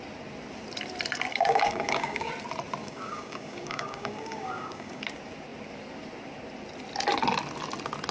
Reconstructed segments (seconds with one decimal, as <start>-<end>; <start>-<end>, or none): 1.3-2.3; 2.8-5.0